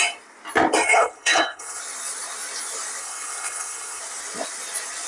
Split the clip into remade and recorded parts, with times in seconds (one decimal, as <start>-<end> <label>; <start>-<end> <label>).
0.0-0.9 recorded; 0.9-1.8 remade; 1.8-3.0 recorded; 3.0-4.0 remade; 4.0-5.1 recorded